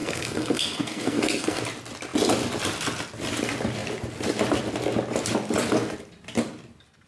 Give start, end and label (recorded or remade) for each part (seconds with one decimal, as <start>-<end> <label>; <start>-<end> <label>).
0.0-1.6 remade; 1.6-7.1 recorded